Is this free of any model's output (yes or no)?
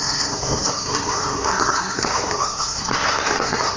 no